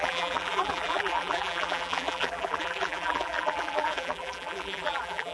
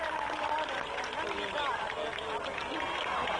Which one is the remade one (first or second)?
first